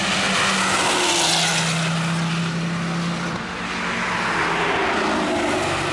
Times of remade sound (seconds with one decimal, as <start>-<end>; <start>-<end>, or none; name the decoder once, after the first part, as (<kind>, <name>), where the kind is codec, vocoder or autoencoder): none